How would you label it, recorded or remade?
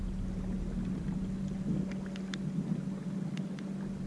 recorded